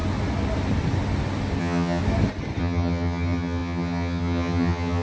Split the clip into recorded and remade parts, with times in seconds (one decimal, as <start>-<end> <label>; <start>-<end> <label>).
0.0-1.6 recorded; 1.6-2.0 remade; 2.0-2.6 recorded; 2.6-5.0 remade